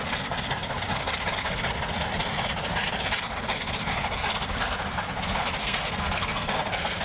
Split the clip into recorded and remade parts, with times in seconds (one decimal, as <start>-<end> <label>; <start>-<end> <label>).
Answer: 0.0-5.6 recorded; 5.6-7.0 remade